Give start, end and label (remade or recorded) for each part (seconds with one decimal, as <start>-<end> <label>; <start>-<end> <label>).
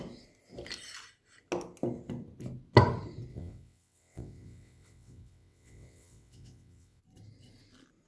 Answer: 0.0-3.3 recorded; 3.3-7.0 remade; 7.0-8.1 recorded